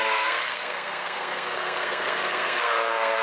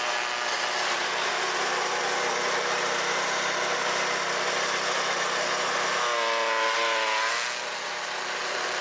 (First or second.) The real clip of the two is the second